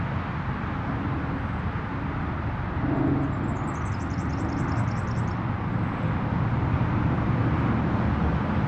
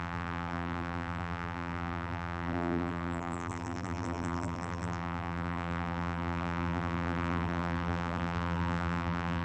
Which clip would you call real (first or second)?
first